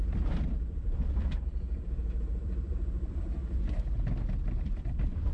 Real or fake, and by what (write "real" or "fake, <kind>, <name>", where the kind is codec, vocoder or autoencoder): fake, vocoder, BigVGAN v2